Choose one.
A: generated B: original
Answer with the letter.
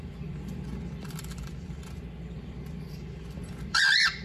A